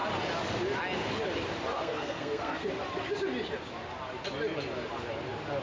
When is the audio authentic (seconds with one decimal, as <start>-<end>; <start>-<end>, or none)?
0.0-1.7; 2.7-5.6